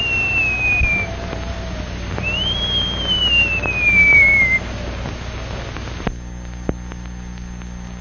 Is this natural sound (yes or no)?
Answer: yes